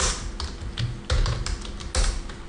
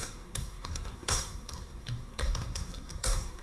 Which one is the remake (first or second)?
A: second